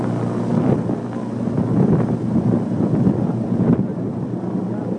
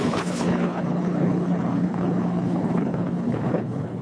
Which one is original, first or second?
first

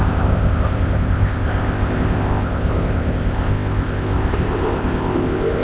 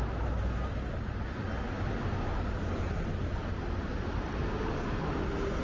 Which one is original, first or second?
second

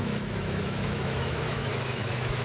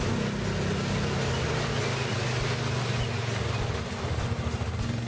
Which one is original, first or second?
second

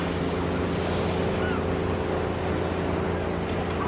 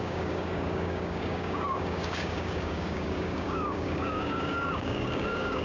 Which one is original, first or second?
first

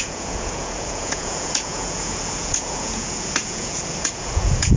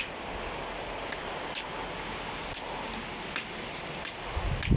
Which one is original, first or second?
second